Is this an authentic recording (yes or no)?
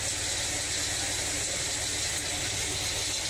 yes